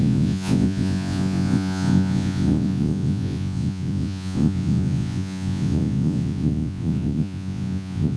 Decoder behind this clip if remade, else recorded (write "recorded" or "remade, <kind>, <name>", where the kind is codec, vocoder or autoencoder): remade, vocoder, Vocos